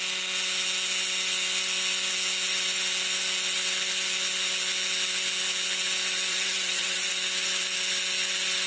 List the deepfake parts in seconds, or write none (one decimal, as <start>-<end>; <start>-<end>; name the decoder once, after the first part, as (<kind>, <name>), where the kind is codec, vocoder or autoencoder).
6.3-7.1 (vocoder, HiFi-GAN)